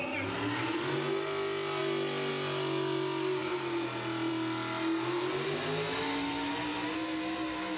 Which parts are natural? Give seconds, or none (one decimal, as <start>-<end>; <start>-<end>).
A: 0.0-7.8